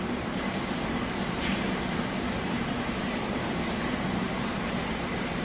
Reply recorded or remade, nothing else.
remade